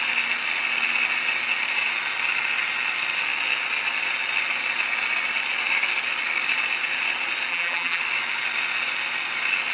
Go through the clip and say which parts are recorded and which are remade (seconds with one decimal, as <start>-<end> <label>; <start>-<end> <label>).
0.0-7.5 recorded; 7.5-8.0 remade; 8.0-9.7 recorded